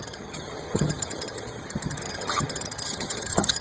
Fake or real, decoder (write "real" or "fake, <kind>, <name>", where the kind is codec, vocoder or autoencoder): fake, vocoder, HiFi-GAN